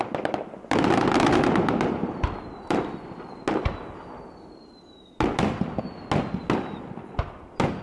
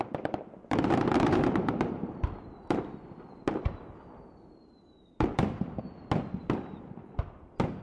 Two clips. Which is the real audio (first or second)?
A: first